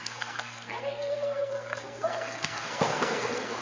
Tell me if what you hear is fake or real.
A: fake